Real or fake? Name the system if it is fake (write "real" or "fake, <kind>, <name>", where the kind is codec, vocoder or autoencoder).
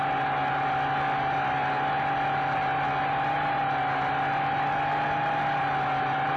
real